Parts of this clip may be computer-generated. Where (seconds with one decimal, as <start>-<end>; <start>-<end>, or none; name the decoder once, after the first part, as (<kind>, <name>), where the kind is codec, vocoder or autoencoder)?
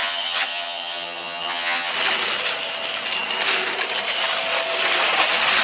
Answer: 0.0-1.9 (vocoder, HiFi-GAN)